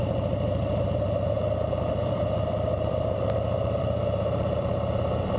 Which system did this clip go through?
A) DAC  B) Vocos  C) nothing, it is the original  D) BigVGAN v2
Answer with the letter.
D